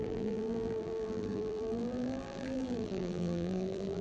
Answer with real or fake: fake